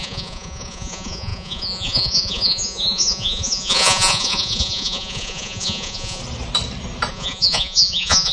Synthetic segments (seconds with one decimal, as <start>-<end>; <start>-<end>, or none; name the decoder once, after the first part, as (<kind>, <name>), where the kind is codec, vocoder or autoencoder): 0.0-6.2 (vocoder, Vocos); 7.1-8.3